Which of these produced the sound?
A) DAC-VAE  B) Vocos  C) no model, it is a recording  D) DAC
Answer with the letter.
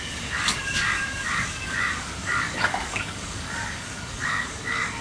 D